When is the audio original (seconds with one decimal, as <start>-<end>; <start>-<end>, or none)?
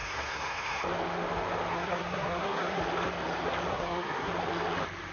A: 0.8-1.7; 2.8-3.7; 4.3-5.1